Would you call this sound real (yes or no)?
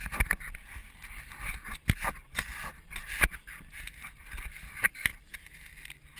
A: yes